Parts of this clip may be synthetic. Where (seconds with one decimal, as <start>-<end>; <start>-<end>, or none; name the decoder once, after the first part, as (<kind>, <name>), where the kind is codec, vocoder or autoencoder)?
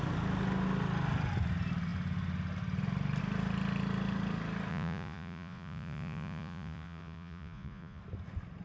4.7-8.0 (vocoder, Vocos)